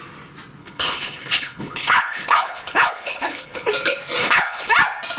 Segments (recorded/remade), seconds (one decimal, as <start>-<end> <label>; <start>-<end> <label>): 0.0-0.6 recorded; 0.6-3.7 remade; 3.7-4.2 recorded; 4.2-4.7 remade; 4.7-5.2 recorded